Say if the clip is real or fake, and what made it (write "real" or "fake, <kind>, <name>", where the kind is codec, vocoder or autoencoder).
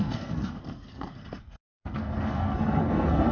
fake, codec, SNAC